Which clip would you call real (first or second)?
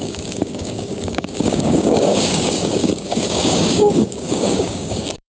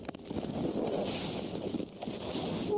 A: second